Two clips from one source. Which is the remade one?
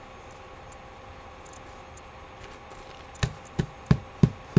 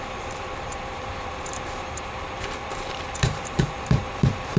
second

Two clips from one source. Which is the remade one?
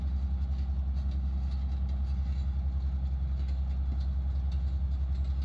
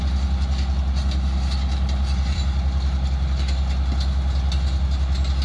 second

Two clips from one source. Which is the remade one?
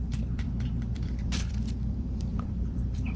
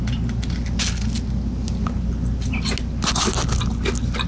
first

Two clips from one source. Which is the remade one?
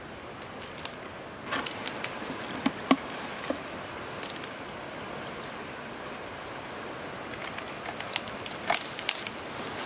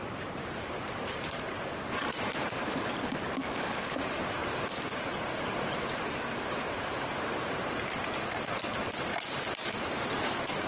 second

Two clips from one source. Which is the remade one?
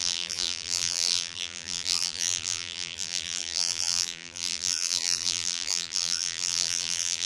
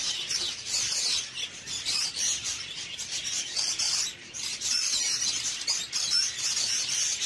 first